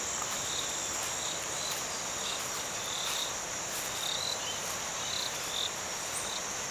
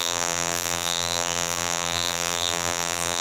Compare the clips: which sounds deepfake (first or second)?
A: second